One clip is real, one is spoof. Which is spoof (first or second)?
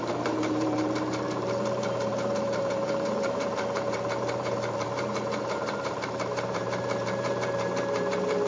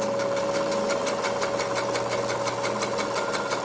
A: first